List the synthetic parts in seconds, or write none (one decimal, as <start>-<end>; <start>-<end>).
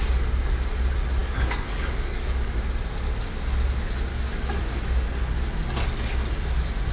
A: 1.2-2.5; 4.1-4.6